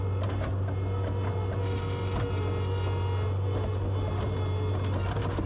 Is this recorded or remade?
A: recorded